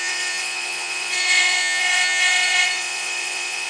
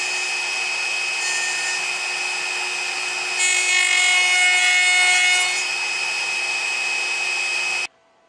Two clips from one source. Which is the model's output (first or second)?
first